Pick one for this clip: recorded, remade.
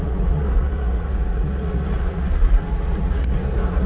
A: remade